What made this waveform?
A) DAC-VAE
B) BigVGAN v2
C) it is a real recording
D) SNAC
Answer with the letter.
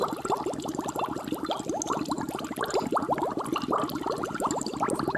C